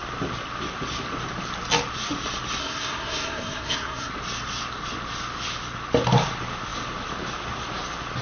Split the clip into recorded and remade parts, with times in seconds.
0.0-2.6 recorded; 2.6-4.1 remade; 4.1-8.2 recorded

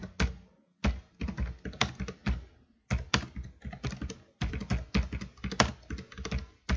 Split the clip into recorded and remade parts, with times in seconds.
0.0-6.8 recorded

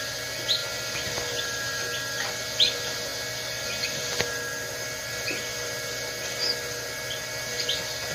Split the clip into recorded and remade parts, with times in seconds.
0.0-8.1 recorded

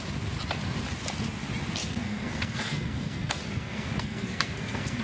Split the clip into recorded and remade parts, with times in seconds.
0.0-1.8 recorded; 1.8-5.0 remade

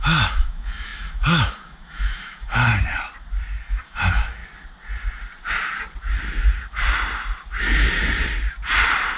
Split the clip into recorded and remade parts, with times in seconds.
0.0-2.7 remade; 2.7-3.6 recorded; 3.6-4.4 remade; 4.4-9.2 recorded

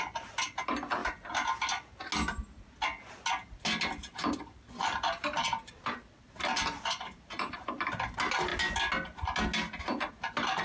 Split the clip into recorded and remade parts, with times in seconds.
0.0-4.0 recorded; 4.0-7.7 remade; 7.7-10.6 recorded